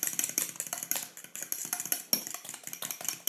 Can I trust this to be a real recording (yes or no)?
yes